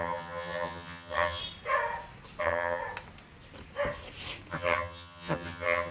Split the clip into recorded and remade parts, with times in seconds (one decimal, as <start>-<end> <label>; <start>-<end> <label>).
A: 0.0-1.4 remade; 1.4-2.4 recorded; 2.4-2.8 remade; 2.8-4.5 recorded; 4.5-5.9 remade